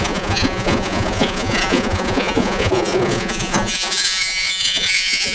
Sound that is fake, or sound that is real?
fake